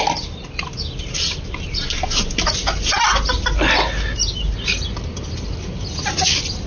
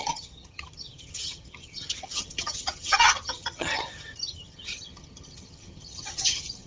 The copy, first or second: second